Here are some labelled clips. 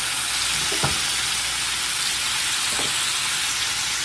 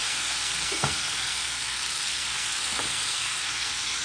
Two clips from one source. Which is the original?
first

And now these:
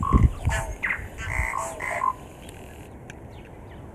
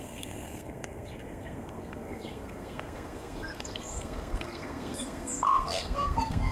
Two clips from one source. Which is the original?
first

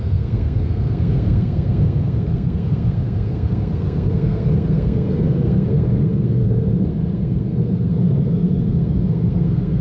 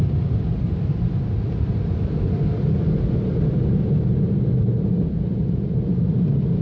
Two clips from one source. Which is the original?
second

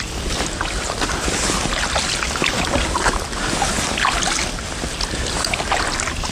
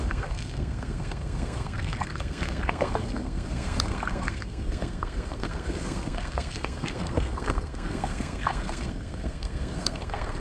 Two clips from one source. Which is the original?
first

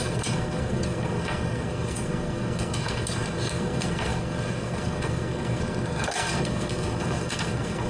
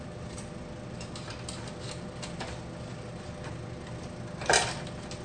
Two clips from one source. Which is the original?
second